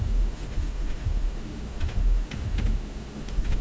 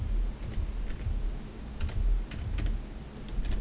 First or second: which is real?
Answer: second